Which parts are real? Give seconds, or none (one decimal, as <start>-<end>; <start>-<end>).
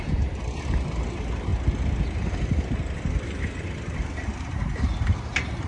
0.0-5.7